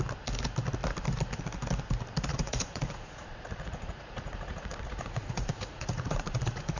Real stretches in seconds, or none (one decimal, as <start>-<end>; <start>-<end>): 0.0-2.3